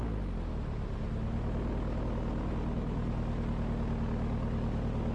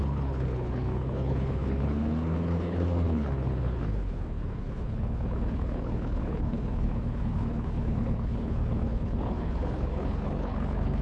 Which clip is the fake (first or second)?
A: second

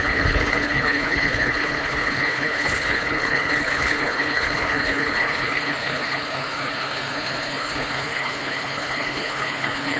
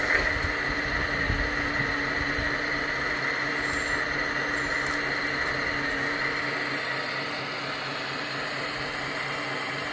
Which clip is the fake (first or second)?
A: first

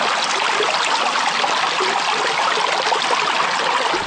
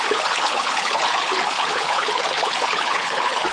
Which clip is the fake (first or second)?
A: second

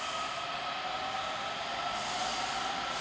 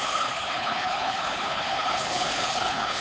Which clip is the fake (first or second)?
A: second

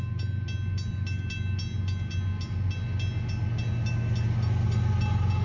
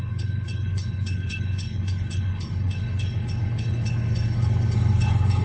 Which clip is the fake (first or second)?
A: second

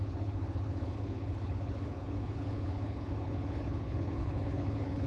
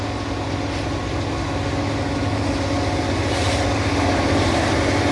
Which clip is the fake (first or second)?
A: first